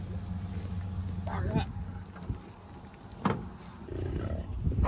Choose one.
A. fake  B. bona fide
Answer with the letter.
B